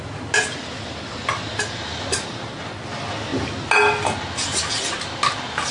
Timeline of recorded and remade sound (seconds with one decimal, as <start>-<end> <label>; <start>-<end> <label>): 0.0-5.7 recorded